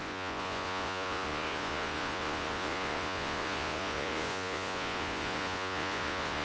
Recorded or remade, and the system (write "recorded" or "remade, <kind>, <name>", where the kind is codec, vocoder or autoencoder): remade, vocoder, Vocos